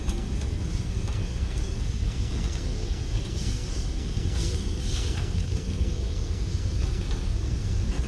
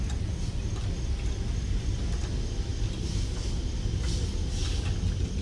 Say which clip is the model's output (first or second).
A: first